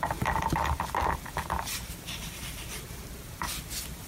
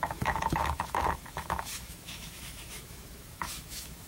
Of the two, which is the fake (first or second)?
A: second